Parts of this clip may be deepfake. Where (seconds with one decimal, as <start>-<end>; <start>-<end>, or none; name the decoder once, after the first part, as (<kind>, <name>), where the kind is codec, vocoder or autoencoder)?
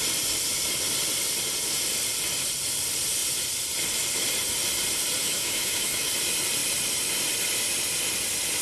5.2-6.1 (autoencoder, DAC-VAE)